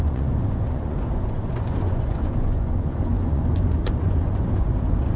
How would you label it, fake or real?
fake